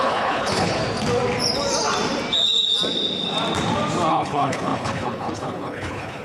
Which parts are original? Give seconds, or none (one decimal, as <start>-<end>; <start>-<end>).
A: 0.8-4.1